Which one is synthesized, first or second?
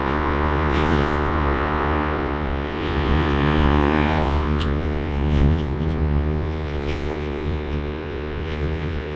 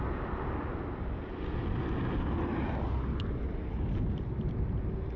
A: first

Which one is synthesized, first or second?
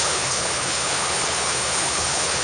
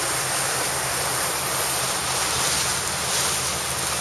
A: first